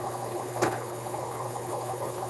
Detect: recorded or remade remade